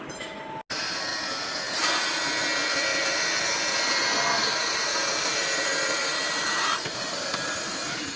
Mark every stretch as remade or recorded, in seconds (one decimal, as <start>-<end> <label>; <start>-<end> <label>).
0.0-4.4 recorded; 4.4-8.2 remade